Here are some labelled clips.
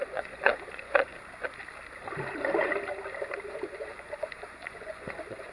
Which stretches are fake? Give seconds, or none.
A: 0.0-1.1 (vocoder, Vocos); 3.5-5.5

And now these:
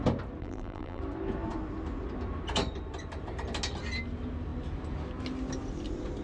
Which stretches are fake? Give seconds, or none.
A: 0.4-1.0 (vocoder, BigVGAN v2)

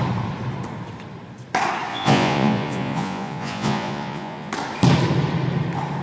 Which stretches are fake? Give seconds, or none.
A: 1.9-4.5 (vocoder, Vocos)

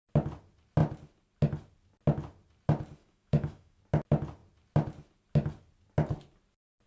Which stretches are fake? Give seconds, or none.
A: 3.0-3.8 (autoencoder, DAC-VAE)

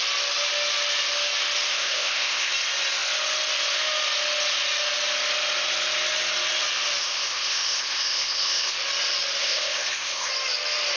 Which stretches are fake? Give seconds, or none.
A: 1.7-2.5 (codec, ZipCodec); 7.0-8.8; 9.4-10.3

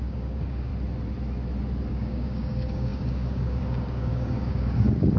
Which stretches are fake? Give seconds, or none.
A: 0.0-0.7 (codec, DAC); 1.9-5.2

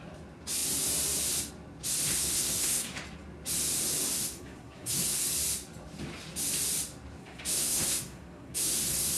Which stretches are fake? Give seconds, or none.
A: 2.1-3.0 (codec, SNAC); 4.2-5.2; 7.2-9.2